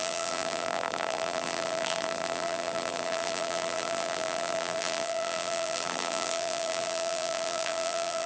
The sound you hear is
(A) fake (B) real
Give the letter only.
A